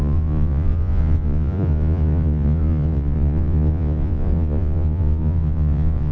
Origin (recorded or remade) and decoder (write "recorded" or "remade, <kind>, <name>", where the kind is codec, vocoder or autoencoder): remade, vocoder, Vocos